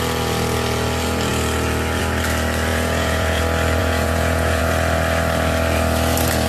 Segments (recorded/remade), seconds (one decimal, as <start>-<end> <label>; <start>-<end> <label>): 0.0-2.7 recorded; 2.7-3.4 remade; 3.4-3.8 recorded; 3.8-4.6 remade; 4.6-6.5 recorded